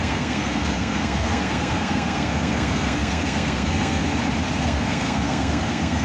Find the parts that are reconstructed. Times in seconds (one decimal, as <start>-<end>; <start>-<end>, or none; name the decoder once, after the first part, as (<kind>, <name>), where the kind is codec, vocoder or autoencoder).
0.0-4.0 (codec, SNAC); 4.6-6.0